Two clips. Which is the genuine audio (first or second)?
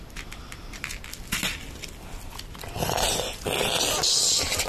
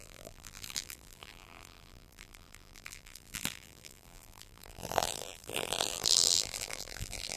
first